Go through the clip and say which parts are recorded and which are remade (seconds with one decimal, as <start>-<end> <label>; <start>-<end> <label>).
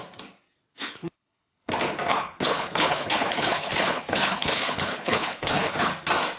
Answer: 0.0-0.7 recorded; 0.7-1.7 remade; 1.7-2.1 recorded; 2.1-5.9 remade; 5.9-6.4 recorded